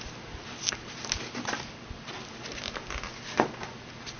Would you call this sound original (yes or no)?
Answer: yes